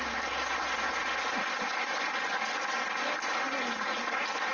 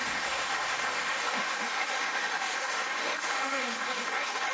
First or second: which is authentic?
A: first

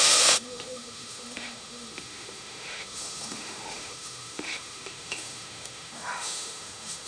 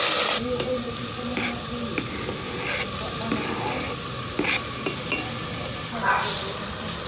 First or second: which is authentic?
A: second